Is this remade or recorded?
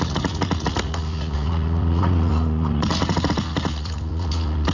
remade